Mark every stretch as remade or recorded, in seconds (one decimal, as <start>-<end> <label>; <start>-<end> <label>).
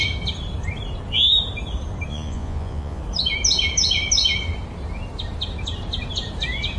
0.0-2.1 recorded; 2.1-3.0 remade; 3.0-6.8 recorded